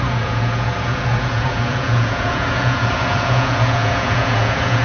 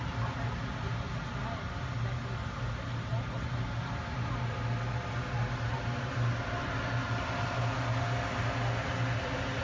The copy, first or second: first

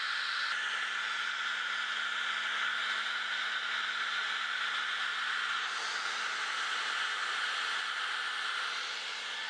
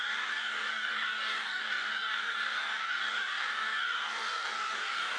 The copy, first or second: second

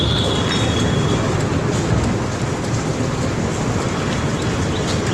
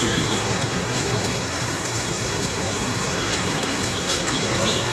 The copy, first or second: second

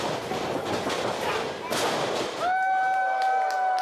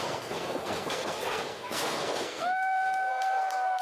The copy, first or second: second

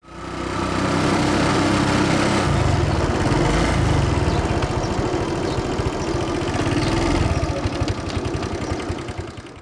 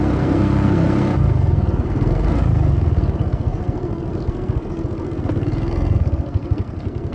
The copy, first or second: second